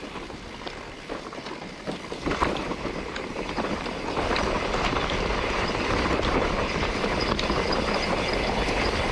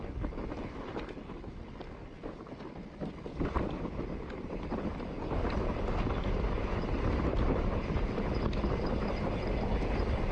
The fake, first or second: first